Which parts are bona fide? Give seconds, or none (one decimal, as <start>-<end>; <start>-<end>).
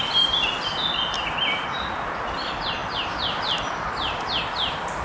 0.0-5.0